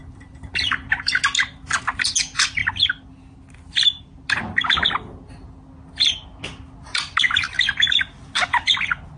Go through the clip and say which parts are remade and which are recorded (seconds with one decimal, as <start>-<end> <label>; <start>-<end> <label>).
0.0-9.2 recorded